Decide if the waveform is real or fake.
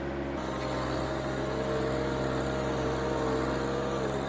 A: real